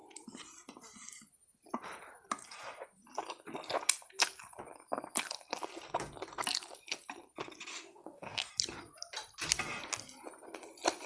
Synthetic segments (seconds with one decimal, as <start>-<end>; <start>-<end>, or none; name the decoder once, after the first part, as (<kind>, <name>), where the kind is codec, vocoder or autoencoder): 7.7-8.5 (autoencoder, DAC-VAE)